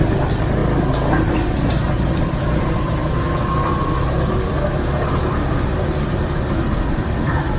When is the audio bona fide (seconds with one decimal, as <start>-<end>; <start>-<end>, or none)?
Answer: 0.6-2.2; 3.0-5.1